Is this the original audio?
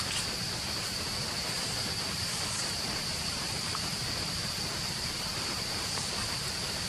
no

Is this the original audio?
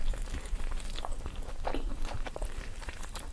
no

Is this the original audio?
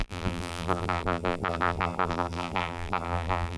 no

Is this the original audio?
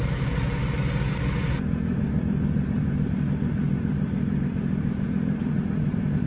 no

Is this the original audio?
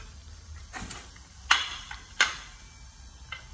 no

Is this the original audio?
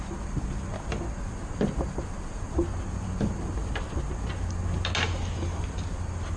yes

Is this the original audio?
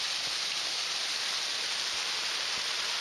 no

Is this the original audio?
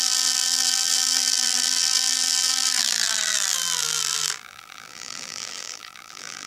no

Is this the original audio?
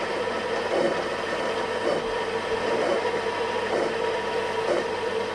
yes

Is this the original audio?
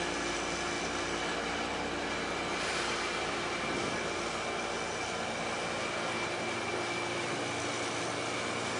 yes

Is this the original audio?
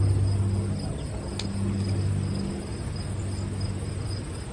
yes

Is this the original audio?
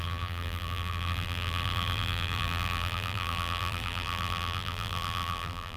no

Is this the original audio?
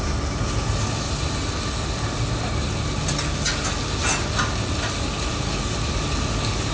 yes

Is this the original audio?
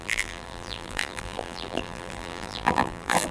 no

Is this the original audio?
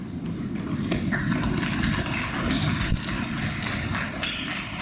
yes